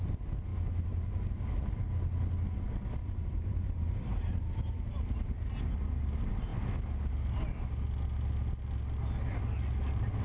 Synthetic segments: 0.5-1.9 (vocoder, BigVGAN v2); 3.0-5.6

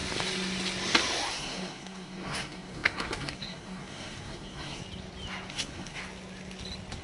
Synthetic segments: 1.3-4.8 (codec, SNAC); 5.5-6.0

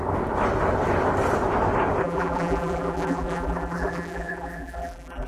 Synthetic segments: 2.0-5.3 (vocoder, BigVGAN v2)

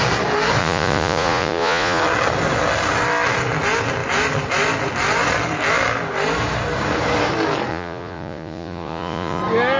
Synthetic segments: 0.6-2.0 (vocoder, Vocos); 7.7-9.4

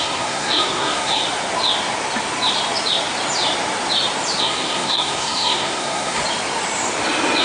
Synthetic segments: 0.0-1.2 (codec, SNAC); 4.4-6.2

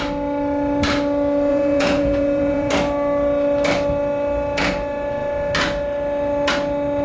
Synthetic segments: 1.5-2.7 (vocoder, Vocos)

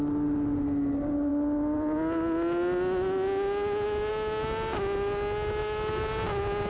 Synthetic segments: none

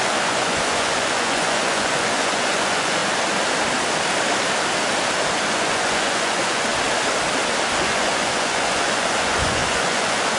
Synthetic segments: 0.0-3.0 (vocoder, Vocos); 5.5-6.7; 7.8-10.4